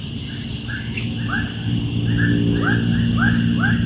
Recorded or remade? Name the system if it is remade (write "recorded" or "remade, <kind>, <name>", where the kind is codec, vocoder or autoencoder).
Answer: recorded